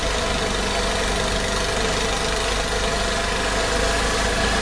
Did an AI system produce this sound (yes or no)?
no